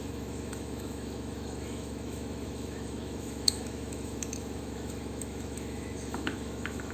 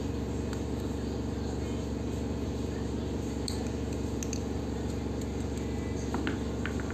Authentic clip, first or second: second